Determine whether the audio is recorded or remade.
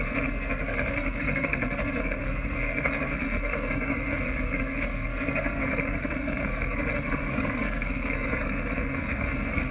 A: remade